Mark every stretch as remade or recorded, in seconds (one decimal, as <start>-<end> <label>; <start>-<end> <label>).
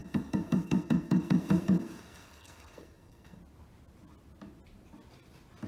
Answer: 0.0-3.4 remade; 3.4-5.7 recorded